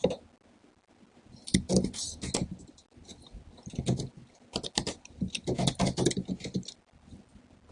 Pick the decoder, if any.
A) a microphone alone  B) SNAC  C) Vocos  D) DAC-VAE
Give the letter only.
A